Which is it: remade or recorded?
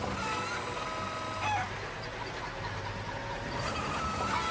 recorded